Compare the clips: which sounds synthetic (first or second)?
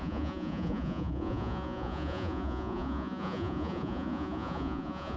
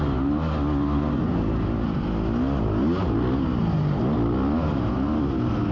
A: first